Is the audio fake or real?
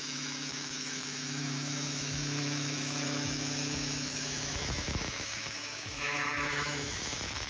fake